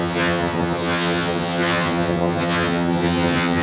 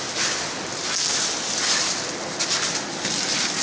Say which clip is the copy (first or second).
first